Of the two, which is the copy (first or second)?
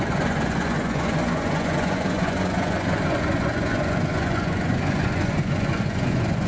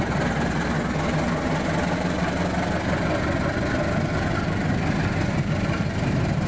first